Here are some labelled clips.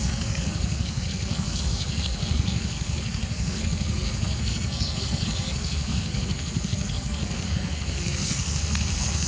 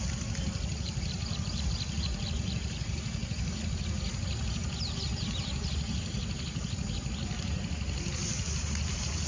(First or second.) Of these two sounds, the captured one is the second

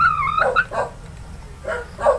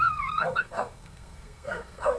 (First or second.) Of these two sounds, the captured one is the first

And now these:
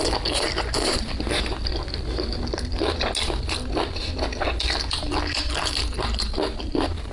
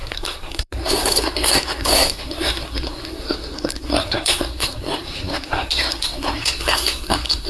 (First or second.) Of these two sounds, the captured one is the first